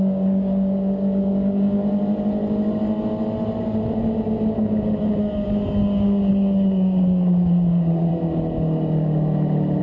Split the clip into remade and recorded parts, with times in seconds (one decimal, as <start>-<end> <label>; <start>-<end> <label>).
0.0-1.8 remade; 1.8-6.3 recorded; 6.3-8.1 remade; 8.1-9.8 recorded